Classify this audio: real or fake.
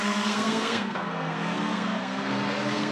fake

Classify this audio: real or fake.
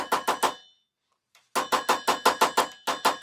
real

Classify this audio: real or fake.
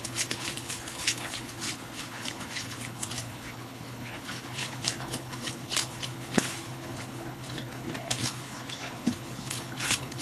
fake